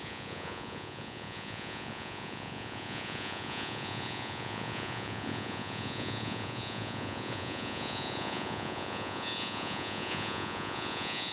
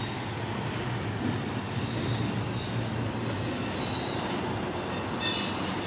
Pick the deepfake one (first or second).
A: first